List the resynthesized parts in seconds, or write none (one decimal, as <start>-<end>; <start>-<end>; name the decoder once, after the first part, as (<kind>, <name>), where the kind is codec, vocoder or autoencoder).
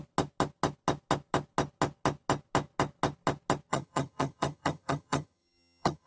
3.7-6.1 (vocoder, HiFi-GAN)